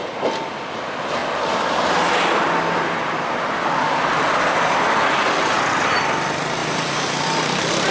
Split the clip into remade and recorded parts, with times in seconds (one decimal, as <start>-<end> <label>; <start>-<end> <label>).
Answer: 0.0-6.6 recorded; 6.6-7.9 remade